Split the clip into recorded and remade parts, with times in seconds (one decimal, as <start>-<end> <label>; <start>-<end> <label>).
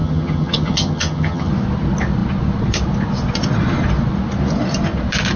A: 0.0-1.5 remade; 1.5-5.4 recorded